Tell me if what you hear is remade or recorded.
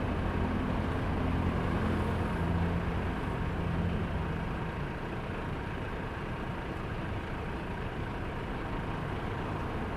recorded